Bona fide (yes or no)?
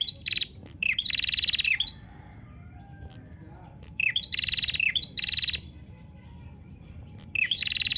no